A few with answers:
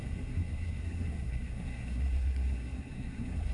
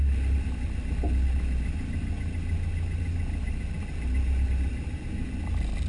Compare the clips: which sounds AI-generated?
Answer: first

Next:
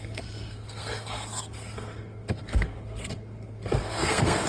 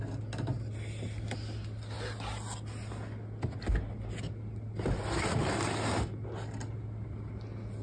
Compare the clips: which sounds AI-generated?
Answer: first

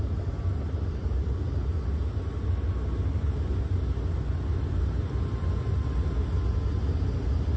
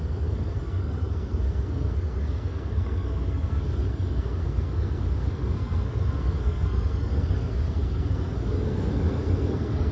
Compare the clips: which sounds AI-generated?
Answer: second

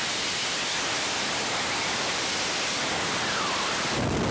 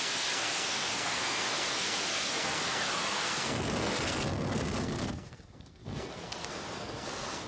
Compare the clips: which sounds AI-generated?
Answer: second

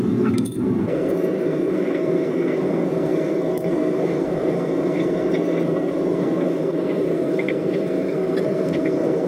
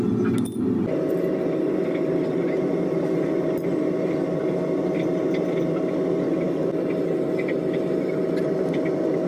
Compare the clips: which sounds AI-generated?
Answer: first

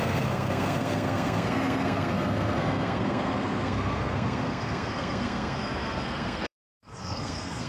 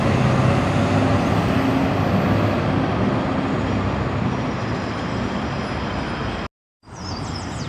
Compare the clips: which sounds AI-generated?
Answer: first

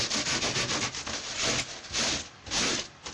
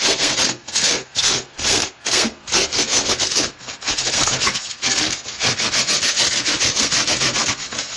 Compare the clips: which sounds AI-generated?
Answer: second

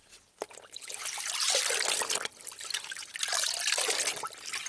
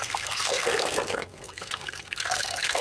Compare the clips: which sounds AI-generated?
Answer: second